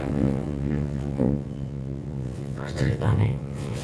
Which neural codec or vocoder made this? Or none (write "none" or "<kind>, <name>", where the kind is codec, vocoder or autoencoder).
vocoder, WaveNeXt